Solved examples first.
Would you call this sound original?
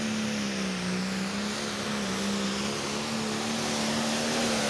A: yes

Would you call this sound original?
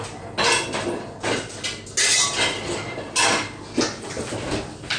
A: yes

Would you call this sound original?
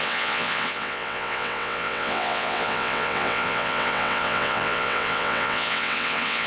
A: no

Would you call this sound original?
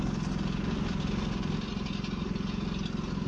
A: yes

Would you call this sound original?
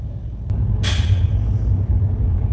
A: yes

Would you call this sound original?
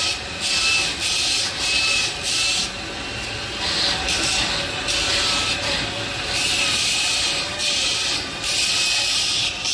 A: yes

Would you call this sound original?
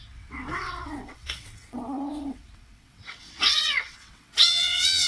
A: no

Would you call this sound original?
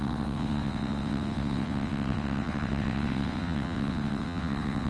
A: no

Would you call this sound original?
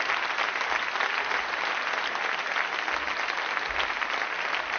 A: yes